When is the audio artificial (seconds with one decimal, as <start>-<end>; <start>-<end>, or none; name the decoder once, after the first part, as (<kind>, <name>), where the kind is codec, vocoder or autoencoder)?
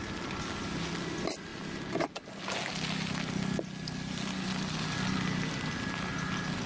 none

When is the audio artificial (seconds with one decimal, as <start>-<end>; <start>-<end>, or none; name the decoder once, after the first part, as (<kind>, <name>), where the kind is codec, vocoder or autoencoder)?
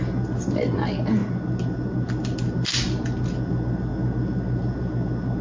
none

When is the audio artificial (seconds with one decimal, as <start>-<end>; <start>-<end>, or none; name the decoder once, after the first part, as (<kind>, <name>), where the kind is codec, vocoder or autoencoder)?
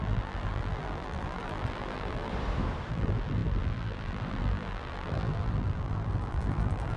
0.0-2.3 (vocoder, BigVGAN v2); 2.9-7.0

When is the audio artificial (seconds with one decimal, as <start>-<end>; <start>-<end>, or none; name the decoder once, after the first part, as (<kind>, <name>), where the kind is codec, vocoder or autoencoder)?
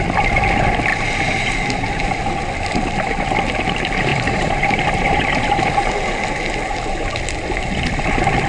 4.1-5.7 (vocoder, BigVGAN v2)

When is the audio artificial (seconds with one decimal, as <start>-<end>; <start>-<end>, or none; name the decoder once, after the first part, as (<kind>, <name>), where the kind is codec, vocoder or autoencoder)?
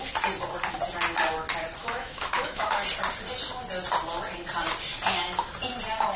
1.8-2.8 (autoencoder, DAC-VAE)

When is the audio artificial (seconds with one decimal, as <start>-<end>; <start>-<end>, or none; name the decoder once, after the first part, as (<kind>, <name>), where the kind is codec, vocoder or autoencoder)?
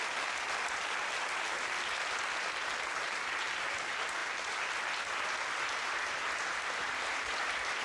none